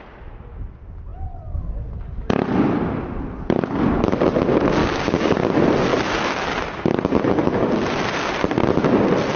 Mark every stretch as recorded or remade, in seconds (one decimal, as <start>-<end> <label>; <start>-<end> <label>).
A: 0.0-4.8 recorded; 4.8-5.5 remade; 5.5-9.4 recorded